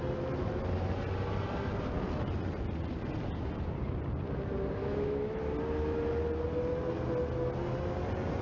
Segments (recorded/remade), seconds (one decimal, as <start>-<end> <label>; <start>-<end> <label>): 0.0-4.8 recorded; 4.8-5.4 remade; 5.4-8.4 recorded